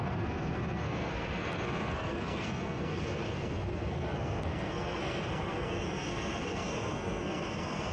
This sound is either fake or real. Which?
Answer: fake